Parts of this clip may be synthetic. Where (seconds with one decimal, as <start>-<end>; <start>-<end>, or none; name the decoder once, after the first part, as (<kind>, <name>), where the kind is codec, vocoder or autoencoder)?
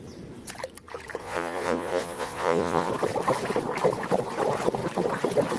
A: 1.2-2.9 (vocoder, Vocos)